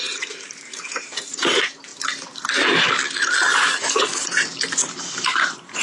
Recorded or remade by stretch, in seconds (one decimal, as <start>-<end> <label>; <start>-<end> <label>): 0.0-1.9 remade; 1.9-5.2 recorded; 5.2-5.8 remade